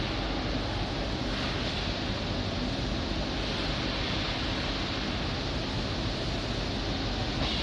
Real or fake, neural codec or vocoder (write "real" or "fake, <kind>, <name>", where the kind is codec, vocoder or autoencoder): real